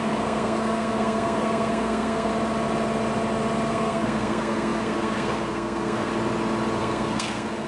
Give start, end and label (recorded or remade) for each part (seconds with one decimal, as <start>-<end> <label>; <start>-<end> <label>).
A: 0.0-2.3 remade; 2.3-3.7 recorded; 3.7-6.1 remade; 6.1-6.8 recorded; 6.8-7.7 remade